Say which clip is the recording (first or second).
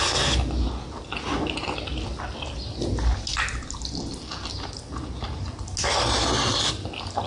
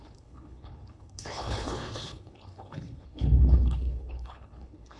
first